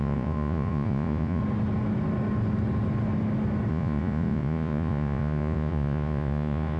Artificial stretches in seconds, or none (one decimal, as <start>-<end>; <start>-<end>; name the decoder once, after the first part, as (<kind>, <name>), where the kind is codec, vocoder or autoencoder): 0.0-1.4 (vocoder, Vocos); 3.7-6.8